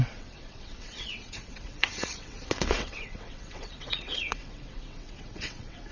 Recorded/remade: remade